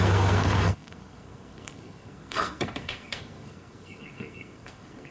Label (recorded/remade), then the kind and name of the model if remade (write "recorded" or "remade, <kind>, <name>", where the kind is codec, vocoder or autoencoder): remade, codec, SNAC